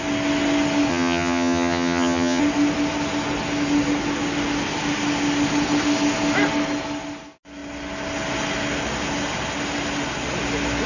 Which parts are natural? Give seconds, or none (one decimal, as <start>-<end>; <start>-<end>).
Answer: 0.0-0.9; 2.4-10.9